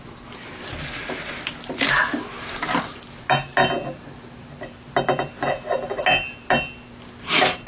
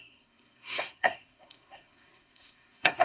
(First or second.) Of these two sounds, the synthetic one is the second